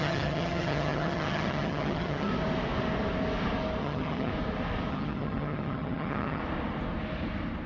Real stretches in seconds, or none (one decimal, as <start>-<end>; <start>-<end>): 2.3-3.8; 4.3-4.9; 6.4-7.7